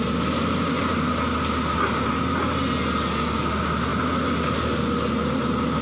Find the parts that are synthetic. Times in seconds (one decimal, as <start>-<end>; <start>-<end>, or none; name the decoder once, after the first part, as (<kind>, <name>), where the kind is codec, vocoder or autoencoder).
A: none